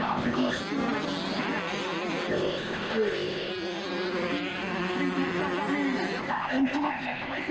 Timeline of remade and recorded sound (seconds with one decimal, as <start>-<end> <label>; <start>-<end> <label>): 0.0-0.6 remade; 0.6-2.3 recorded; 2.3-3.5 remade; 3.5-6.2 recorded; 6.2-7.5 remade